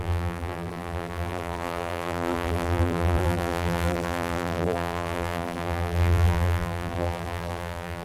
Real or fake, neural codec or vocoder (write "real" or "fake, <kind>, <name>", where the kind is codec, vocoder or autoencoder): fake, vocoder, BigVGAN v2